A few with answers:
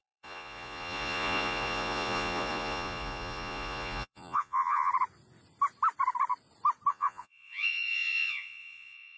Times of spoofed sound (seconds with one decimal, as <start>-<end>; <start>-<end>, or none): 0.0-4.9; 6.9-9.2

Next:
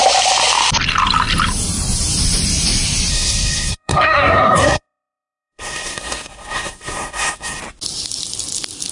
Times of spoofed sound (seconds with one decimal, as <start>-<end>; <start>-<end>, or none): 3.1-7.6

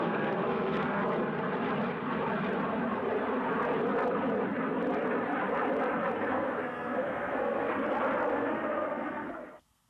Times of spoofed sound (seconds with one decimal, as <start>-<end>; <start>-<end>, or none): 0.0-1.0; 6.3-7.7; 8.3-9.9